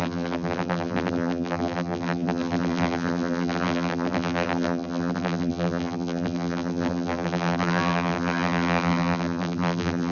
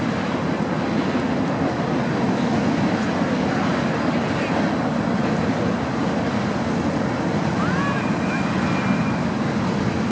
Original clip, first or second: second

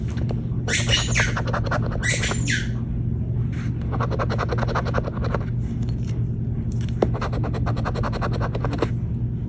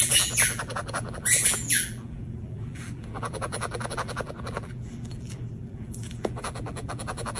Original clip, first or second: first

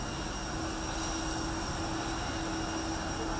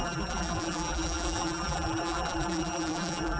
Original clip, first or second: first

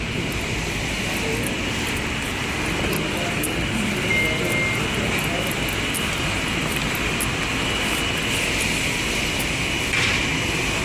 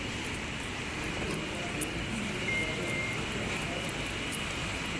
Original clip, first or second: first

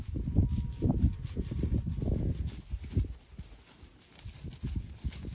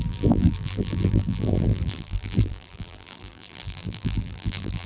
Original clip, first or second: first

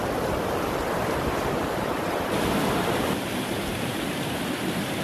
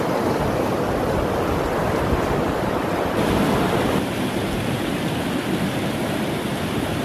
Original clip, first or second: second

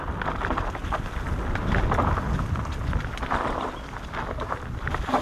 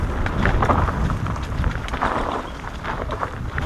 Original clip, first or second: first